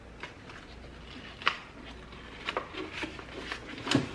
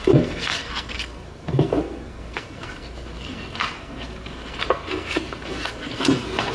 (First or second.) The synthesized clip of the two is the second